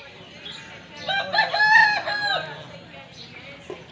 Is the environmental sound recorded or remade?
recorded